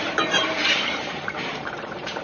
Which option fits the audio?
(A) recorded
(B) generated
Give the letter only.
B